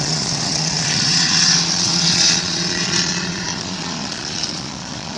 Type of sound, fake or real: fake